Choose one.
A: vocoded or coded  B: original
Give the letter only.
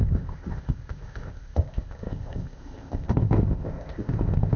A